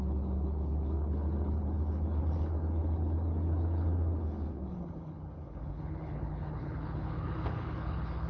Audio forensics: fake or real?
fake